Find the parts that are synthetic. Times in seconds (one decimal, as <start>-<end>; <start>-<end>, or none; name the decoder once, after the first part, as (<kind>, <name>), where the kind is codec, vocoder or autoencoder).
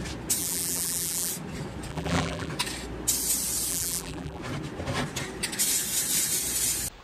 0.4-1.3 (vocoder, BigVGAN v2); 1.9-2.5; 3.7-4.4